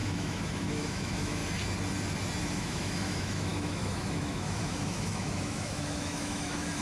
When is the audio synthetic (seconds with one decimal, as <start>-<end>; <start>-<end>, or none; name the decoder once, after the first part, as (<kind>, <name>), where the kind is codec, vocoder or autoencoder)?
0.0-1.4 (autoencoder, DAC-VAE); 2.4-6.8